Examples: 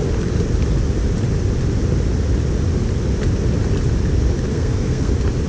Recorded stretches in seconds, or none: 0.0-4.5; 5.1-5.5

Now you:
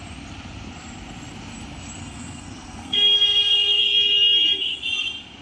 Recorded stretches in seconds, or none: 0.0-2.0; 3.8-5.4

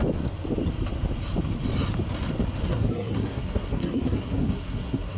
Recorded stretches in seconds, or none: 0.0-2.6

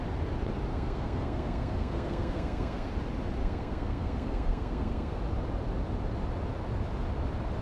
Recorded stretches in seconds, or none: 0.0-0.7; 2.9-3.4; 5.2-7.6

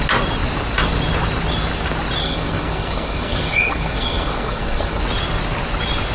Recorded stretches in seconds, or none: 0.0-2.2; 5.0-6.1

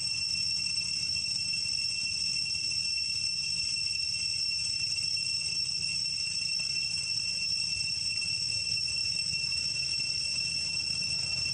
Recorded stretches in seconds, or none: 0.0-11.5

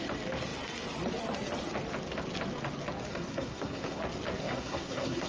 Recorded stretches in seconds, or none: 0.0-3.1; 4.0-4.4

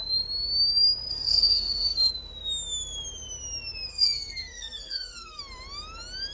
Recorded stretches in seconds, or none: 0.0-1.1; 2.1-3.9; 5.4-6.3